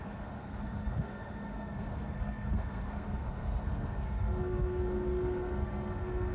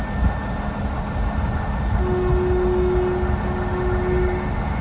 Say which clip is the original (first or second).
second